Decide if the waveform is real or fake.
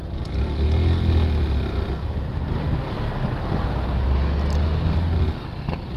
real